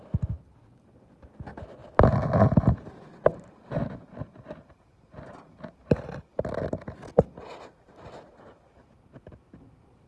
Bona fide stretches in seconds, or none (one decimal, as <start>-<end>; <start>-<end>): 0.0-10.1